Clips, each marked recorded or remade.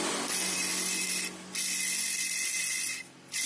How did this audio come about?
recorded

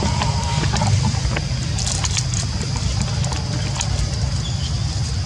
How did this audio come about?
recorded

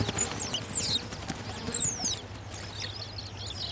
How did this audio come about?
recorded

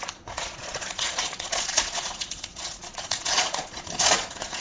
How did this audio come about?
remade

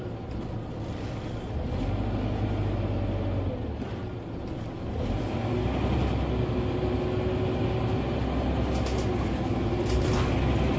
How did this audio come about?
recorded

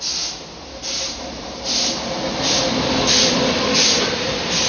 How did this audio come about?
recorded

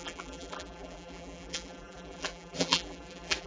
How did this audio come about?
remade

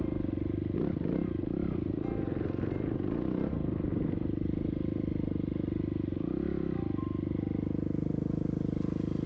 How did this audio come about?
recorded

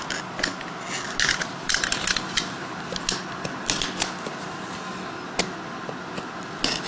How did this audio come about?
recorded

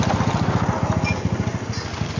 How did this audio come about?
recorded